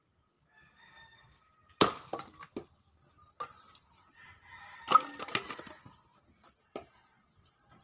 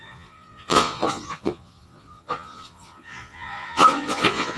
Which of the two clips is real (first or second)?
first